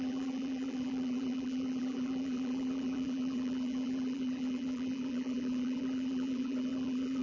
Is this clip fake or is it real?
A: fake